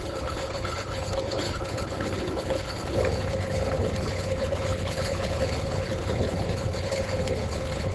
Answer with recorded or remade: remade